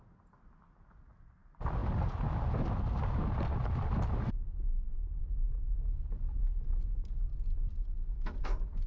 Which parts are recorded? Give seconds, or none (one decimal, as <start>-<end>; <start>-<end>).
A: 0.0-8.9